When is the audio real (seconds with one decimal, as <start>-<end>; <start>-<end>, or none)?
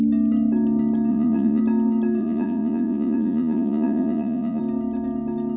0.0-1.1; 1.6-2.2; 4.6-5.6